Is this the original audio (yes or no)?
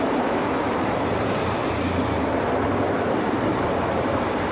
no